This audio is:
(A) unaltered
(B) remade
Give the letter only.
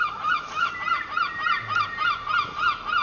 A